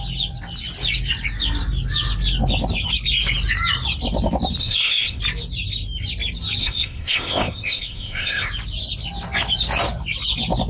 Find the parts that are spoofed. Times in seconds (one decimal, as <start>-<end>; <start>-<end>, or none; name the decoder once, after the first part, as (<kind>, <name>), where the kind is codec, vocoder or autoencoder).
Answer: 4.6-5.2 (codec, ZipCodec); 6.6-8.5